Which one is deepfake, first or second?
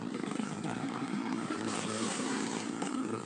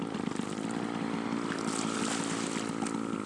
first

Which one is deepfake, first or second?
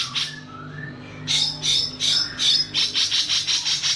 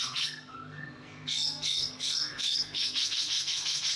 second